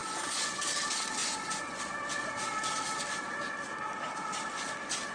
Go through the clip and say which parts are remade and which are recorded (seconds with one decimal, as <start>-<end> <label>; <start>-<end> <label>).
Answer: 0.0-0.6 remade; 0.6-1.2 recorded; 1.2-1.8 remade; 1.8-5.1 recorded